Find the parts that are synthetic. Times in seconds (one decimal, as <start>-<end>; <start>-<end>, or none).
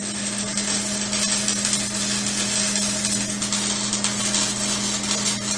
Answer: none